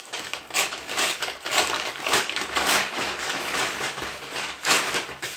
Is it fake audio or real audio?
fake